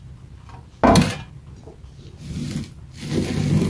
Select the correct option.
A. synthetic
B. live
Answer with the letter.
B